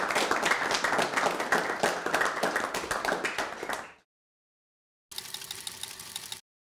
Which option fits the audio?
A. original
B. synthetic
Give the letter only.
A